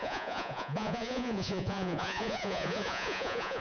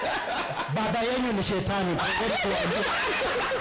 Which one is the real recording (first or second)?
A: second